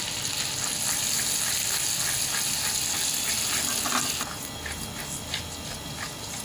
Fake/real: real